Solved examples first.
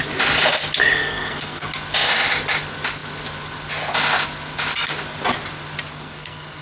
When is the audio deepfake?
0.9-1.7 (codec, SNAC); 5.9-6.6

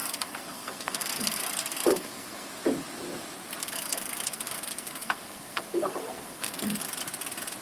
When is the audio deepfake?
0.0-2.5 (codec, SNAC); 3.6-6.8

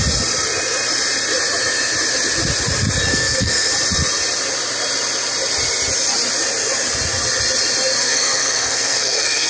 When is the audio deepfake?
3.1-3.7 (codec, SNAC); 8.0-9.5

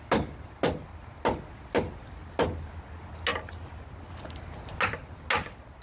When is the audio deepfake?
none

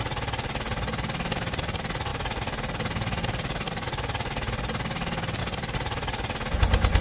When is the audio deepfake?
none

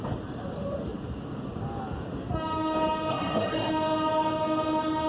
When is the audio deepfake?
3.1-3.7 (codec, SNAC)